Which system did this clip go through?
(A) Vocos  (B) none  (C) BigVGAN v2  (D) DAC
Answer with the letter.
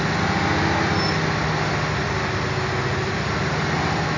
B